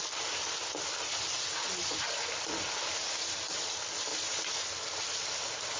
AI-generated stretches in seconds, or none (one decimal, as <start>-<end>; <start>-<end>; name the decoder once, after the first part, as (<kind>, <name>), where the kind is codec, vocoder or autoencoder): none